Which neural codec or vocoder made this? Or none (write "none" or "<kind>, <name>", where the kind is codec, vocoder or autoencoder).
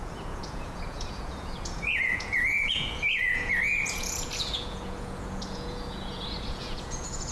vocoder, Vocos